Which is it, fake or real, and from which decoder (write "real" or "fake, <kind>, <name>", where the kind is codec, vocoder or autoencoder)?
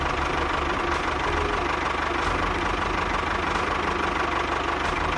real